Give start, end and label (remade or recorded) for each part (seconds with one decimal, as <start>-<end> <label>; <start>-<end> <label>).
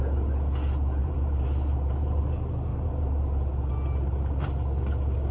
0.0-1.0 recorded; 1.0-2.2 remade; 2.2-2.7 recorded; 2.7-3.7 remade; 3.7-5.3 recorded